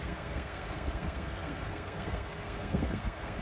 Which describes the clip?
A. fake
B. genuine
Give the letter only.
A